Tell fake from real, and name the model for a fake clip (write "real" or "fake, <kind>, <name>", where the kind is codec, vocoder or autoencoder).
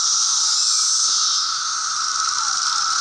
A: real